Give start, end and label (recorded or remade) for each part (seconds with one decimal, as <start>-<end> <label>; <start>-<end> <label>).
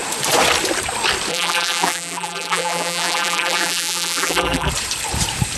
0.0-1.3 recorded; 1.3-4.7 remade; 4.7-5.6 recorded